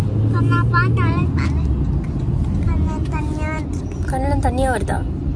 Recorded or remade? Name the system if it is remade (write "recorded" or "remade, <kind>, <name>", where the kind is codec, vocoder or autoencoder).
recorded